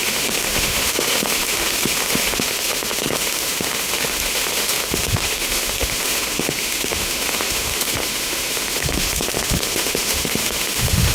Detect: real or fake fake